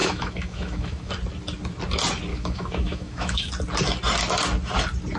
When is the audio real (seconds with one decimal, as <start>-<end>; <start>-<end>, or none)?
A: 1.1-2.3; 3.5-5.2